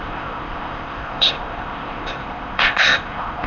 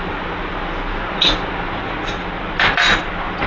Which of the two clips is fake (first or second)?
first